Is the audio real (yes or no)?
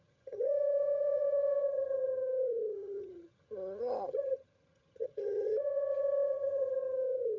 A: no